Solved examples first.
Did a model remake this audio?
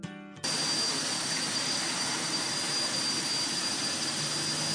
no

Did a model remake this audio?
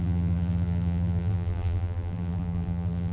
yes